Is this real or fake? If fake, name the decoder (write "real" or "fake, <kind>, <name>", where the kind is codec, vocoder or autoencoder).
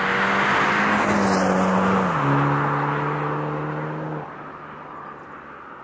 real